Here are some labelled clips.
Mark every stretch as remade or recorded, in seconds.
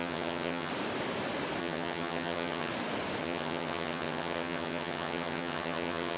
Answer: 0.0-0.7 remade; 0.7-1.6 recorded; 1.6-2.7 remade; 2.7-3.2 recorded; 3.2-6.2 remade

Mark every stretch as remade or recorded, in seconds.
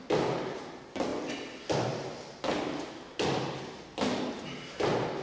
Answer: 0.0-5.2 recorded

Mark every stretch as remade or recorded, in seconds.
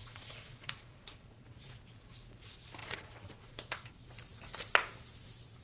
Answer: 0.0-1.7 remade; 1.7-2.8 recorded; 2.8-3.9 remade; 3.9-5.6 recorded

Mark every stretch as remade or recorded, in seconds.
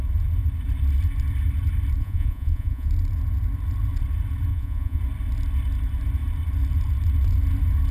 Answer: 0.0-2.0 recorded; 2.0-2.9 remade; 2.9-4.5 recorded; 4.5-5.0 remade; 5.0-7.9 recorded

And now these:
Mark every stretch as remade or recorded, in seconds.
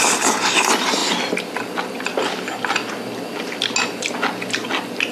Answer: 0.0-5.1 recorded